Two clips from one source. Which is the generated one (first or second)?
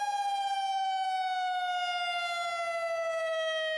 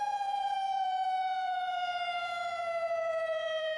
second